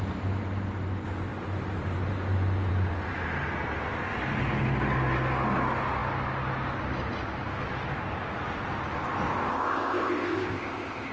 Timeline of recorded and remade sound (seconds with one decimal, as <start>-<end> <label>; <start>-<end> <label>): 0.0-9.5 recorded; 9.5-11.1 remade